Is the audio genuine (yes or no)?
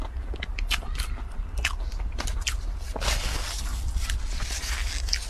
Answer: yes